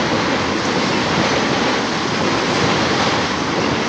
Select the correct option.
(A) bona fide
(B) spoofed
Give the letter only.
A